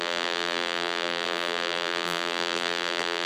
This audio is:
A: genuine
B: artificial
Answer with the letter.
B